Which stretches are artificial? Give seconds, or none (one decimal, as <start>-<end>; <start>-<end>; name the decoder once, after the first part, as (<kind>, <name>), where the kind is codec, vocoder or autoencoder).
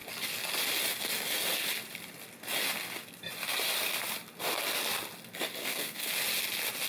5.6-6.1 (codec, SNAC)